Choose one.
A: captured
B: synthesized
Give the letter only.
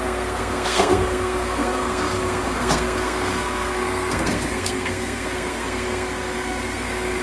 B